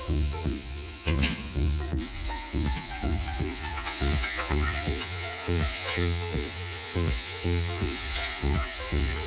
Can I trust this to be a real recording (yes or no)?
no